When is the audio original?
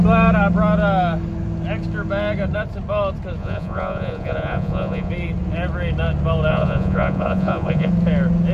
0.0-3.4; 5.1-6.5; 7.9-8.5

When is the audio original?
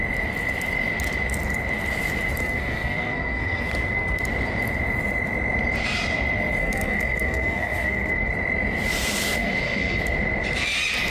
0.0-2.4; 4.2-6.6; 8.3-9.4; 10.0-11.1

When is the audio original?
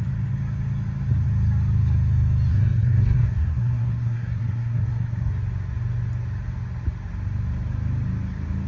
0.0-2.5; 5.3-8.7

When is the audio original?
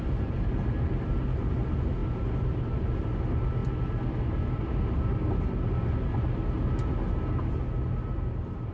0.0-8.7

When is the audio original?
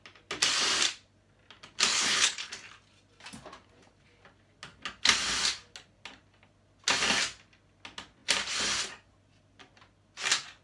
0.0-1.9; 2.5-10.6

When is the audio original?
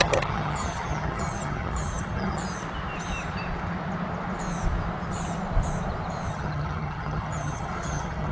2.4-6.3